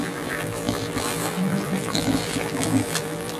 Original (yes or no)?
no